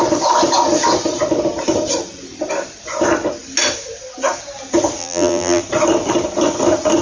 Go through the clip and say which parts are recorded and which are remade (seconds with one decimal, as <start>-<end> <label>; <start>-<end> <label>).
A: 0.0-5.0 recorded; 5.0-5.6 remade; 5.6-7.0 recorded